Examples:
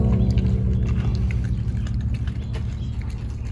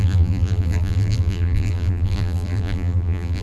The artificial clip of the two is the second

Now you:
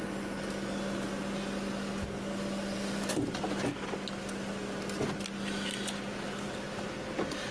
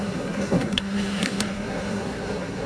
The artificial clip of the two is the second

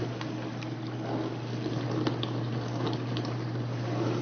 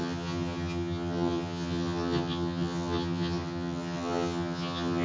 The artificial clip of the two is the second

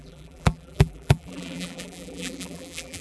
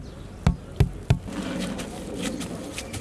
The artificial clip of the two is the first